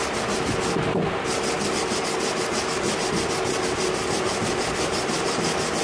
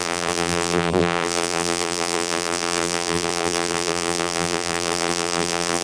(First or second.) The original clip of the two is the first